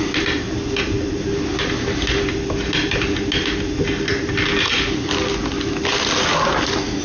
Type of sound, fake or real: real